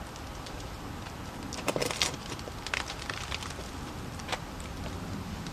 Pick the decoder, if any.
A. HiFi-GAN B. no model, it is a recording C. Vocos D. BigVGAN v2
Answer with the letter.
B